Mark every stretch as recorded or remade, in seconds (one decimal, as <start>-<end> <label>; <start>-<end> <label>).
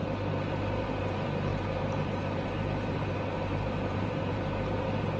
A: 0.0-1.0 recorded; 1.0-5.2 remade